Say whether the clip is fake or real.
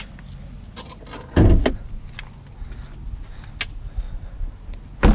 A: real